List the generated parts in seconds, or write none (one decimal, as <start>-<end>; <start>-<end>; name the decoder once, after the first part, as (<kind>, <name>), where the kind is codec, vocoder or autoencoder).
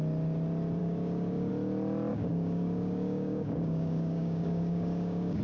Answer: 0.8-1.5 (codec, DAC); 2.1-5.4